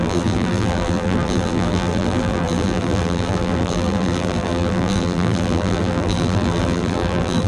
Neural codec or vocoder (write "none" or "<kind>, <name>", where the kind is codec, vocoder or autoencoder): vocoder, BigVGAN v2